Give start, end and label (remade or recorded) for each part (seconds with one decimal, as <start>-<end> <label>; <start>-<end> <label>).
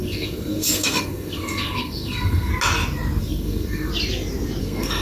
0.0-2.5 remade; 2.5-3.2 recorded; 3.2-3.9 remade; 3.9-4.6 recorded; 4.6-5.0 remade